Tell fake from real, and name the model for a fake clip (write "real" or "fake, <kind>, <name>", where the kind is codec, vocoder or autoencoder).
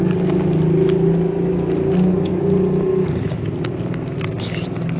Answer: real